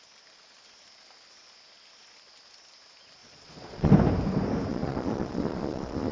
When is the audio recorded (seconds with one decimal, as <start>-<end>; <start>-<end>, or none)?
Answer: 0.0-3.2; 3.9-4.7